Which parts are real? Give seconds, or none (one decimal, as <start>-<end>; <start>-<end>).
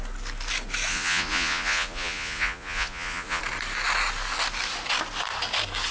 0.0-0.9; 3.4-5.9